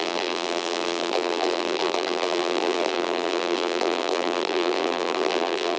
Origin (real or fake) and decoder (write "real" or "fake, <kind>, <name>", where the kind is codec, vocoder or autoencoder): fake, vocoder, BigVGAN v2